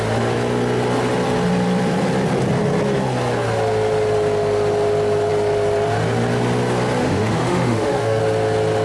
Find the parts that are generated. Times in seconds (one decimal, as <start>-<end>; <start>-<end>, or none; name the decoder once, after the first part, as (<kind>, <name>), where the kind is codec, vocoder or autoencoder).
7.0-8.2 (autoencoder, DAC-VAE)